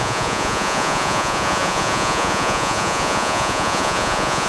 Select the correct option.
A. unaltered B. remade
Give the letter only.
B